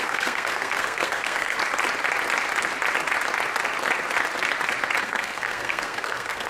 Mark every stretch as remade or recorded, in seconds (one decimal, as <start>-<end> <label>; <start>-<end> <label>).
0.0-1.6 remade; 1.6-5.0 recorded; 5.0-6.5 remade